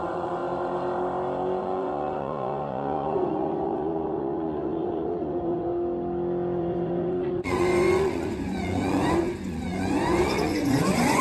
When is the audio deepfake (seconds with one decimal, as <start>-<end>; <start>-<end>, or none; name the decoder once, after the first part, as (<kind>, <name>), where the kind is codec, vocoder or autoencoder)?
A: 0.0-0.4 (vocoder, Vocos); 1.6-5.7; 6.6-11.2